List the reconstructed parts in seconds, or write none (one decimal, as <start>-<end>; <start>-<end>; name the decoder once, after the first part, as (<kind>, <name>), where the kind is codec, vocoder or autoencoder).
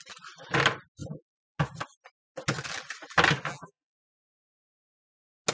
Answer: 3.5-4.5 (vocoder, BigVGAN v2)